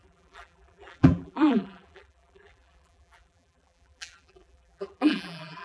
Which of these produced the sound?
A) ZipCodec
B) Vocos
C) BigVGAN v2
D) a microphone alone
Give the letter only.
C